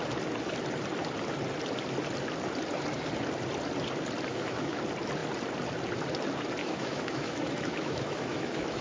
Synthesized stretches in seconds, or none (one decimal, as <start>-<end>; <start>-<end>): 4.3-4.8; 6.6-8.8